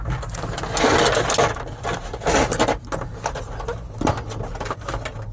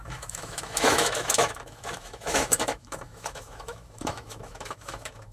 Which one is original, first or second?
first